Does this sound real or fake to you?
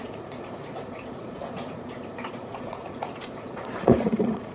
fake